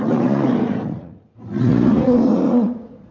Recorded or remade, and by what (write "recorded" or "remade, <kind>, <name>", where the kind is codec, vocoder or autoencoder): remade, vocoder, Vocos